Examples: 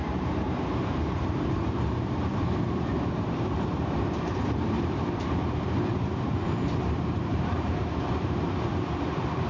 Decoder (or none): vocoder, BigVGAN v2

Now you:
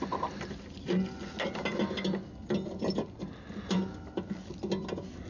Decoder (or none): none